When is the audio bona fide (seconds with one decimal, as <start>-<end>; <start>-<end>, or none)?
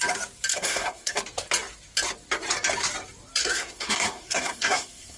0.0-0.5; 1.2-3.4